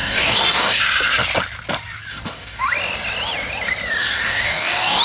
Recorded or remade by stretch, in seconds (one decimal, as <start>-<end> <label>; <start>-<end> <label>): 0.0-0.8 remade; 0.8-2.1 recorded; 2.1-2.6 remade; 2.6-4.0 recorded; 4.0-5.0 remade